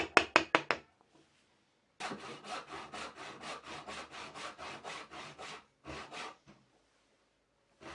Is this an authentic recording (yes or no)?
yes